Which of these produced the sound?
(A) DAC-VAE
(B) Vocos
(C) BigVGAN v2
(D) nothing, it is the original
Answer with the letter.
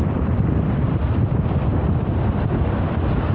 D